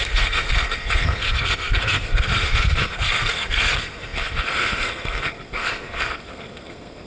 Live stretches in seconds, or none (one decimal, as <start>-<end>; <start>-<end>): none